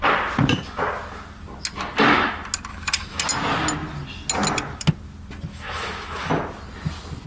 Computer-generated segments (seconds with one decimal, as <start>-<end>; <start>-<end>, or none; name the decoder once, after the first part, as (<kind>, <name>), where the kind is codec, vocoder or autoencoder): 2.7-3.2 (autoencoder, DAC-VAE); 5.5-6.3